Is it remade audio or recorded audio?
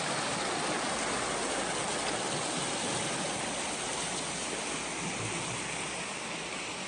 recorded